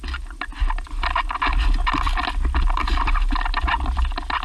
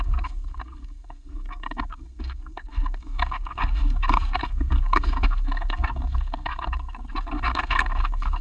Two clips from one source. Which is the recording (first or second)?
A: first